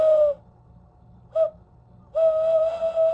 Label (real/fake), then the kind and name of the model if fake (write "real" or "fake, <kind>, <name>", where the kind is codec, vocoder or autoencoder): real